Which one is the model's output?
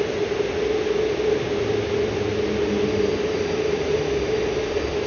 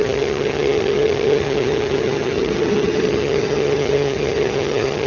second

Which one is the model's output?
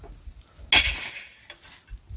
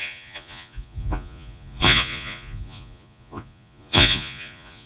second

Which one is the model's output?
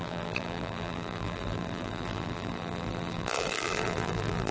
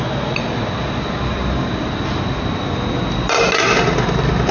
first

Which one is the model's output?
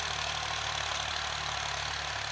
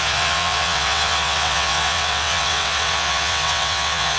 second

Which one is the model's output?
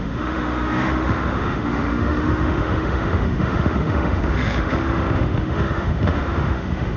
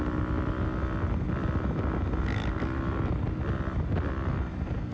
first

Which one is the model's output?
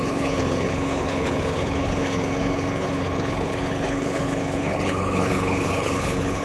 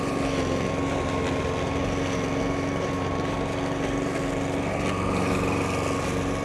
first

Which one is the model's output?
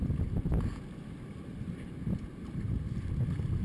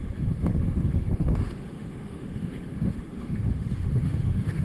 second